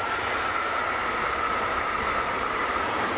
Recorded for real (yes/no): yes